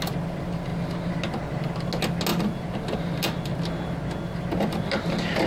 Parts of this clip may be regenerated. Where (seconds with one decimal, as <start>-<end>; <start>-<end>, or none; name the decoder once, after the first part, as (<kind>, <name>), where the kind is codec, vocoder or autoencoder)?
none